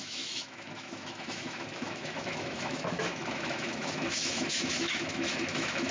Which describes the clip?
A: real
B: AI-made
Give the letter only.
B